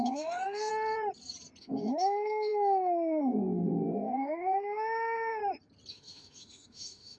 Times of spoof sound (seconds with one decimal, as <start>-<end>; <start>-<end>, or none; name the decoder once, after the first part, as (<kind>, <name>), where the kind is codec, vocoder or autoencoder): 0.0-0.7 (autoencoder, DAC-VAE); 1.6-5.4; 5.9-7.2